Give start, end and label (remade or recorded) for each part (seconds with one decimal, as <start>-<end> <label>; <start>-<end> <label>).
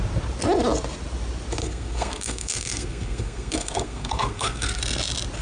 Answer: 0.0-1.6 recorded; 1.6-4.8 remade; 4.8-5.4 recorded